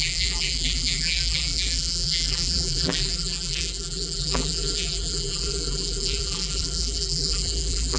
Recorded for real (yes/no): no